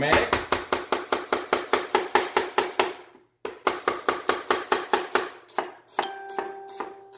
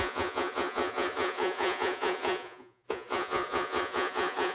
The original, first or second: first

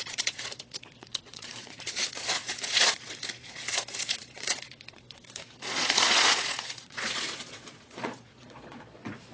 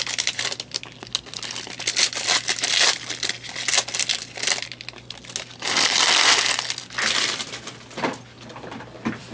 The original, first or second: second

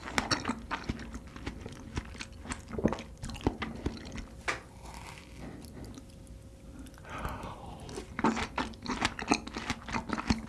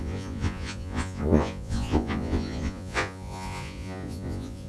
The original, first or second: first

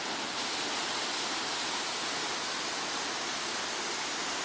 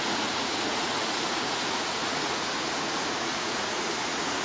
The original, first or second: first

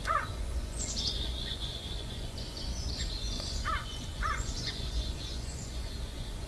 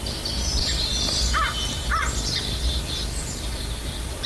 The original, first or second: second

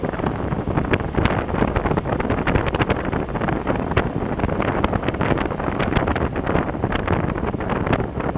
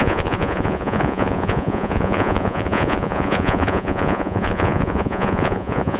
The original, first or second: first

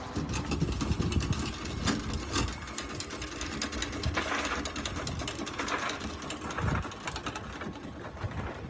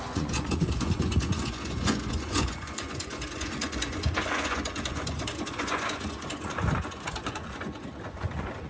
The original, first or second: first